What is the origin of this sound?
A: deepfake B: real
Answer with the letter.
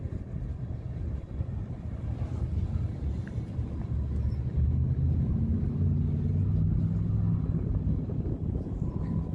B